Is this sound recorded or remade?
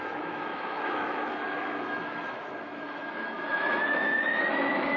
remade